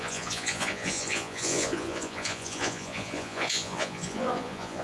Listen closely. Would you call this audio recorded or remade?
remade